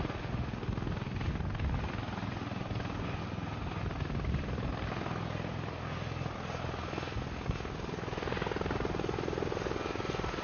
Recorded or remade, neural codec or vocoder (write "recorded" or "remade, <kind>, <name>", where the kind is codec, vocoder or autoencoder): recorded